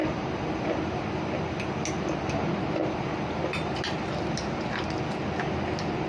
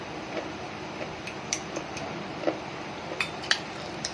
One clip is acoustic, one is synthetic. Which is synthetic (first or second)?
second